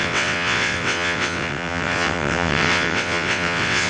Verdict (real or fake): fake